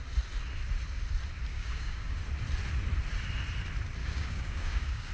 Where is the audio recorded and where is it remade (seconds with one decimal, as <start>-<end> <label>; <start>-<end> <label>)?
0.0-1.5 recorded; 1.5-2.2 remade; 2.2-4.0 recorded; 4.0-5.1 remade